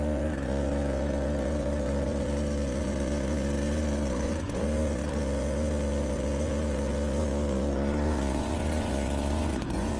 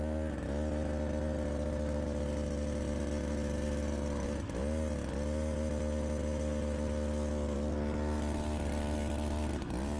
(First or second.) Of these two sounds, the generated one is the first